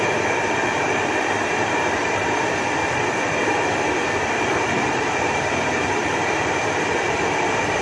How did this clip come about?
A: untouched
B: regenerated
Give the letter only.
B